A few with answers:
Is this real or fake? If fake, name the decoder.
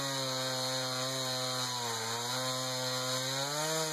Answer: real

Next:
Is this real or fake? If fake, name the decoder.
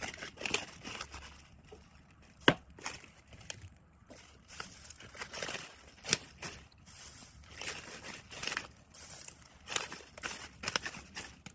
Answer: real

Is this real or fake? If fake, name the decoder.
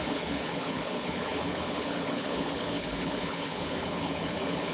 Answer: fake, codec, HILCodec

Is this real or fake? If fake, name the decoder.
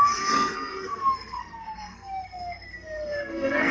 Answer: fake, codec, SNAC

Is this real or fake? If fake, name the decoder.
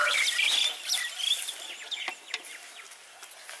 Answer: real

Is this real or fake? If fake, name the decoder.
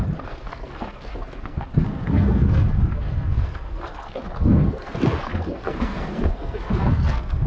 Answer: fake, codec, SNAC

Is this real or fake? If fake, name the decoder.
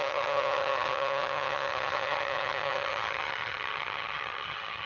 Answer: fake, vocoder, HiFi-GAN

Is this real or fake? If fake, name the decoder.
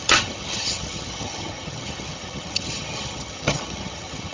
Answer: fake, vocoder, HiFi-GAN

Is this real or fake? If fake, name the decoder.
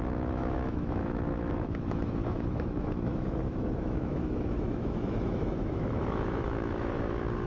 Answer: fake, autoencoder, DAC-VAE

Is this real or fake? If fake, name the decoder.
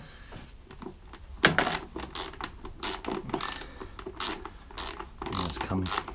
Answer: real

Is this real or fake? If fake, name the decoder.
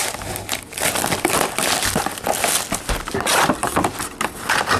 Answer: real